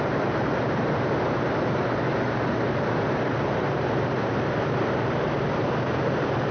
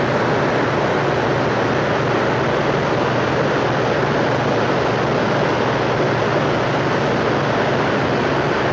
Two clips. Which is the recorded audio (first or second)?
second